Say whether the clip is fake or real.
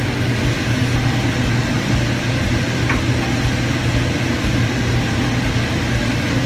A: real